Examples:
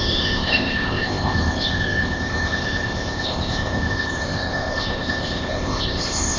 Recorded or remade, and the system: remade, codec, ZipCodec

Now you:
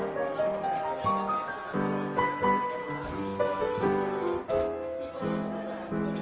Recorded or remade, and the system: recorded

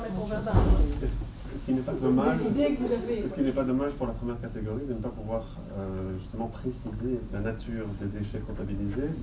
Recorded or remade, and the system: recorded